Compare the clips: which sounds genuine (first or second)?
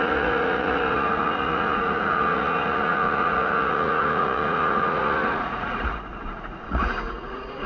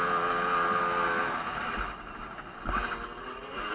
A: second